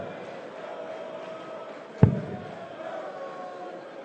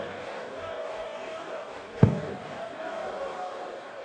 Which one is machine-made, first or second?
second